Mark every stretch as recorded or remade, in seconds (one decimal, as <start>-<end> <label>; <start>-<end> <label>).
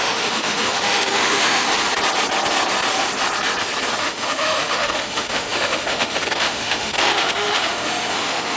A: 0.0-1.7 remade; 1.7-4.0 recorded; 4.0-8.6 remade